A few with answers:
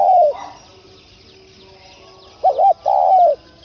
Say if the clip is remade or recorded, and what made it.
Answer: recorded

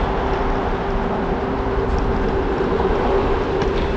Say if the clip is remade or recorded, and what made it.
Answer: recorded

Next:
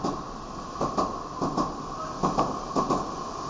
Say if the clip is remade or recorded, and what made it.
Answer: recorded